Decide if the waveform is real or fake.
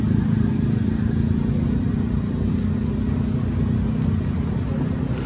real